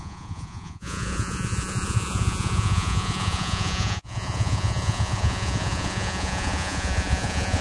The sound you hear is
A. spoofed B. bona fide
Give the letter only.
A